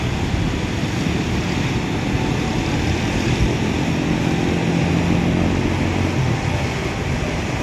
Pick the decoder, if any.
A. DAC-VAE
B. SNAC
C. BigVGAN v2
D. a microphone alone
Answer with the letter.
D